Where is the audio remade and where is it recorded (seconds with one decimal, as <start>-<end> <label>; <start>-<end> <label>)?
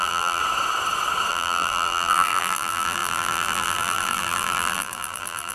0.0-0.4 remade; 0.4-1.3 recorded; 1.3-5.5 remade